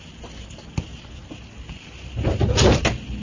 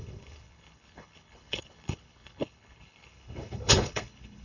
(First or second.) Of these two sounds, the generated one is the second